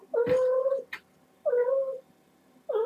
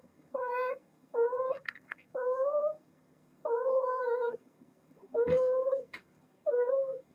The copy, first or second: second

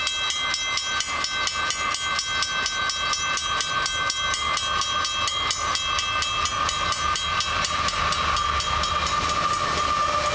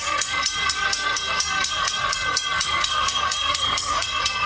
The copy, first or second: second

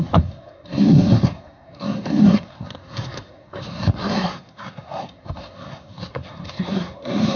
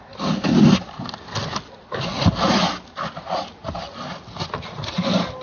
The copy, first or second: first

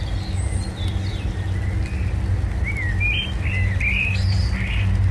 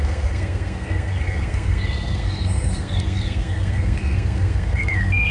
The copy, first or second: second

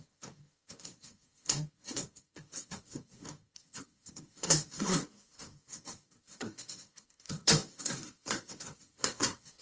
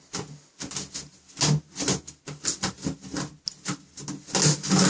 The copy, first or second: first